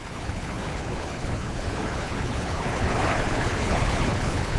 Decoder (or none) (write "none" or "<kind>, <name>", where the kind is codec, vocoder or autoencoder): codec, HILCodec